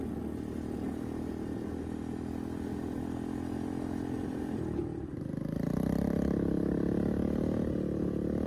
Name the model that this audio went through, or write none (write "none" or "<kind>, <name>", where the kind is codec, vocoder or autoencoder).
none